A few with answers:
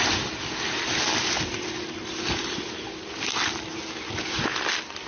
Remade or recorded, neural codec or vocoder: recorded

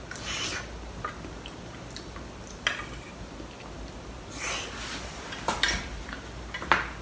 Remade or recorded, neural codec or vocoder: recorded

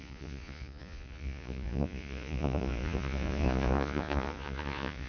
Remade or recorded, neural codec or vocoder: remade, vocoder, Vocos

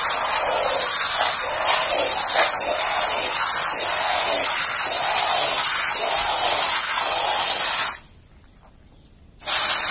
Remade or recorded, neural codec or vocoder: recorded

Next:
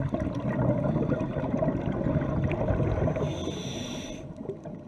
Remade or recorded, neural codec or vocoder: recorded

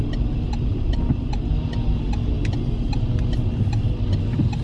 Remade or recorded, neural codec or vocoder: recorded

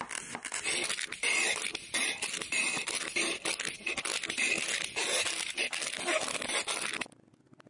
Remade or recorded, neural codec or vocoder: recorded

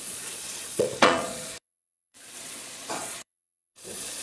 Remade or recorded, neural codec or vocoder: remade, vocoder, Vocos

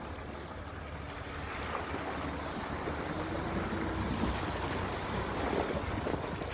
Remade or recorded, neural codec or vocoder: recorded